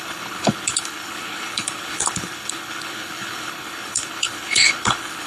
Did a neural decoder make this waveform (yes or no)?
yes